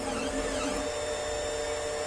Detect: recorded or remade recorded